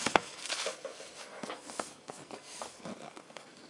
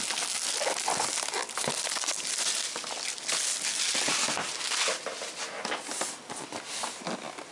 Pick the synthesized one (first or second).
first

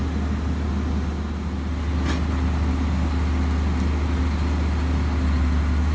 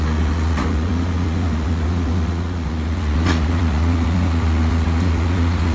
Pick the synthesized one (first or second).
second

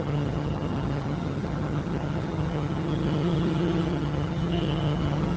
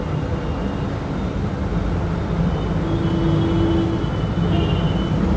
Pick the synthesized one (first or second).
first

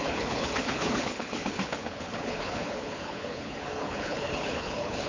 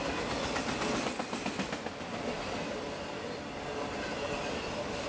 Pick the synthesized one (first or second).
first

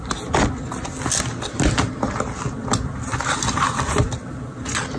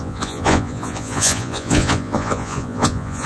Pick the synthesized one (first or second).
second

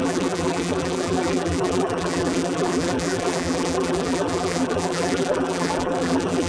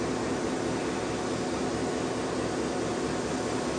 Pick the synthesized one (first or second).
first